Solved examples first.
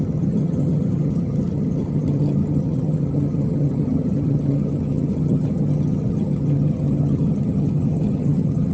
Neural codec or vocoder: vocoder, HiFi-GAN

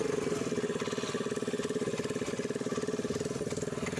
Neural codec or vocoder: none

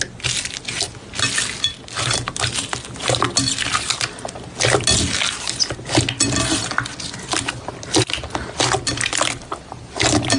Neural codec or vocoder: none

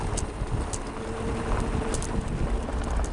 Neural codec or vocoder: none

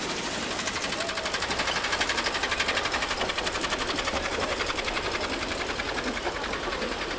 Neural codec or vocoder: none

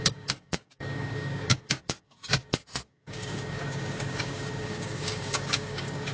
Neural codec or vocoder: codec, DAC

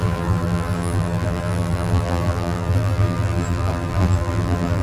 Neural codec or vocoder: vocoder, BigVGAN v2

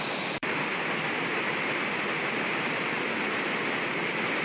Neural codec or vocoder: vocoder, BigVGAN v2